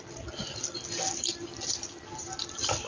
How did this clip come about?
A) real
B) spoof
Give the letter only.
A